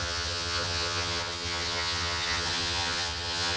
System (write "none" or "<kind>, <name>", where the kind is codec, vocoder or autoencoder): vocoder, HiFi-GAN